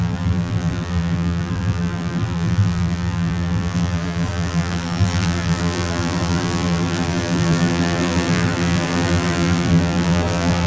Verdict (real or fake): fake